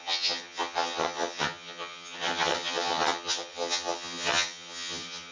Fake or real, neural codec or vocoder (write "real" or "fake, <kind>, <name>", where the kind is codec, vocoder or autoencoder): fake, vocoder, HiFi-GAN